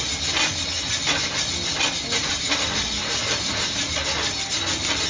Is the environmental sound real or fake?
real